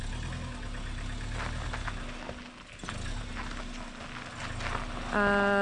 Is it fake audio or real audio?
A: real